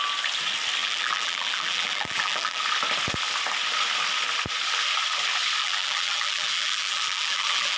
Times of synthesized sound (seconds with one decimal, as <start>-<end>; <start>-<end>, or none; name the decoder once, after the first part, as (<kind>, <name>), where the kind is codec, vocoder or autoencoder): 0.8-2.6 (vocoder, BigVGAN v2); 5.6-7.8